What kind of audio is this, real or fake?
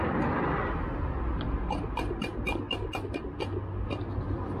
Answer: real